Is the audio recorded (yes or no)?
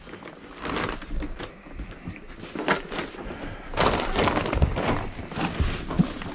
yes